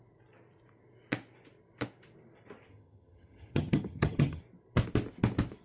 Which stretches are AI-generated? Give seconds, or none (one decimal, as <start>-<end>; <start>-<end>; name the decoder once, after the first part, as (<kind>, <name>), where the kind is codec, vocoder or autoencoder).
2.7-4.4 (vocoder, HiFi-GAN)